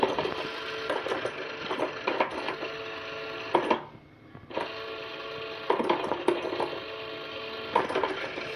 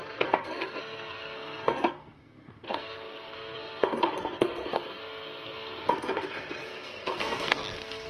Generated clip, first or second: second